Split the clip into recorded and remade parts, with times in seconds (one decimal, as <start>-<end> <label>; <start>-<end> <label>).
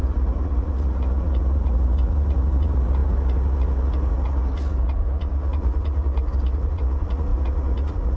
0.0-8.2 remade